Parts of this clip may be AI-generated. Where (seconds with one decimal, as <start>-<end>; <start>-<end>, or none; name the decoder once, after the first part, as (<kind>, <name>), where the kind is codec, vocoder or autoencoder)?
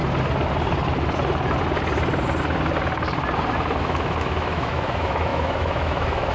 3.8-6.3 (autoencoder, DAC-VAE)